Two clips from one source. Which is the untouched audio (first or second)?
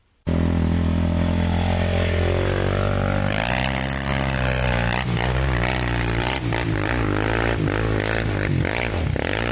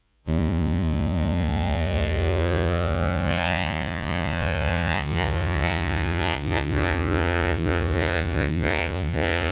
first